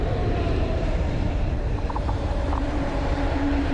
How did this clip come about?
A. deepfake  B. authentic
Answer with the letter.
A